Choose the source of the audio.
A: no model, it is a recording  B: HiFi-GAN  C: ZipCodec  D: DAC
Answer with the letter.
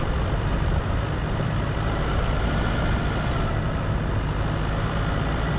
A